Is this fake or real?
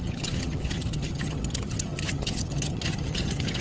fake